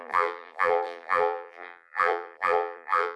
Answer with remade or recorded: remade